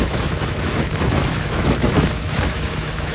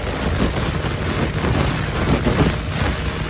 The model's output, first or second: first